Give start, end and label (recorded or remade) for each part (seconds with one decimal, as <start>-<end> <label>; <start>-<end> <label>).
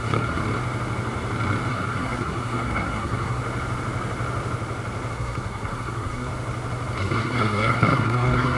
0.0-0.4 remade; 0.4-1.7 recorded; 1.7-3.4 remade; 3.4-5.1 recorded; 5.1-6.3 remade; 6.3-7.0 recorded; 7.0-8.6 remade